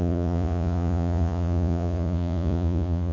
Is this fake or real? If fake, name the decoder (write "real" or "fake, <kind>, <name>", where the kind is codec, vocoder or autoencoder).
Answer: fake, vocoder, Vocos